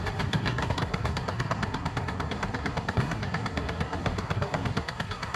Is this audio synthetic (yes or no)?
yes